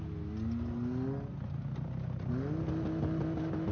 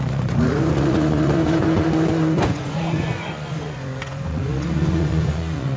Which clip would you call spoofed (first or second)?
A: second